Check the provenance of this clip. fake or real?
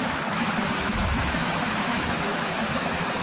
fake